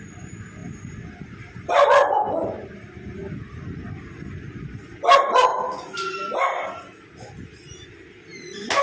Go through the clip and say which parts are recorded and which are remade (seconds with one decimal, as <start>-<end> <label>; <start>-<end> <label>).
0.0-8.8 recorded